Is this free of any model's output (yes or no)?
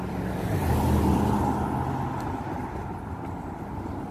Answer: no